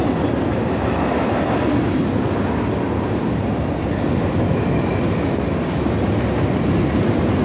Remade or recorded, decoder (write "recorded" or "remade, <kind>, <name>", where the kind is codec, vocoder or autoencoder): recorded